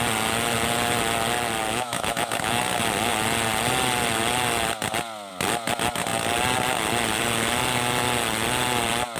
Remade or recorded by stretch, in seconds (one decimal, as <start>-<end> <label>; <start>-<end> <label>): 0.0-1.7 recorded; 1.7-2.6 remade; 2.6-9.2 recorded